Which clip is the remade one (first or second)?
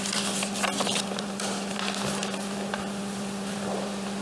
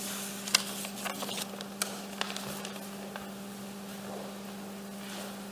first